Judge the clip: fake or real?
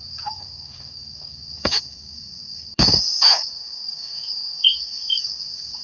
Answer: fake